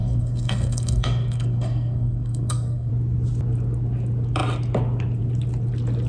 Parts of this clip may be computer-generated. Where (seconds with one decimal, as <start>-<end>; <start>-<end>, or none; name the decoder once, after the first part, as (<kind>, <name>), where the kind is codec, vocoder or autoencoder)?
0.0-2.9 (codec, SNAC)